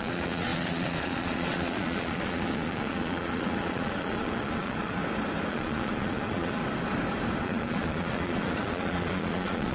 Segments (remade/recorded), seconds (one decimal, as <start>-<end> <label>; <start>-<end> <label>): 0.0-5.0 remade; 5.0-5.5 recorded; 5.5-6.6 remade; 6.6-7.4 recorded; 7.4-9.7 remade